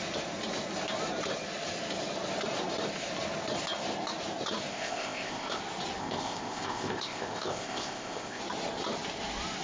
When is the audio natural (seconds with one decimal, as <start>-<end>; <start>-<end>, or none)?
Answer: 0.0-4.7; 5.6-6.0; 8.4-9.6